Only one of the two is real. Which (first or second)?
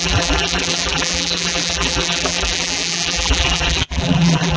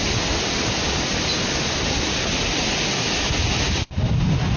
second